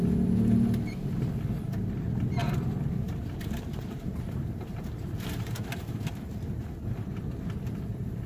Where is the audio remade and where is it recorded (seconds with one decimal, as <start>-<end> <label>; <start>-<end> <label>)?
0.0-2.4 recorded; 2.4-5.8 remade; 5.8-8.3 recorded